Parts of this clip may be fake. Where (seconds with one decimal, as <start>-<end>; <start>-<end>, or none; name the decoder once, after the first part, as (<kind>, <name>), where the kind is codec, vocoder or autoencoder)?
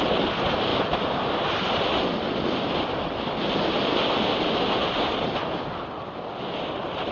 none